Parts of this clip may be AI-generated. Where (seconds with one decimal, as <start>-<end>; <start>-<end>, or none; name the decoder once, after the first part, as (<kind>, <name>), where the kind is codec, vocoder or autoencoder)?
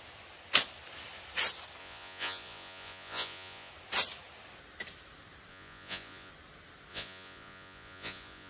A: 1.8-3.7 (vocoder, Vocos); 5.5-6.3; 6.9-8.5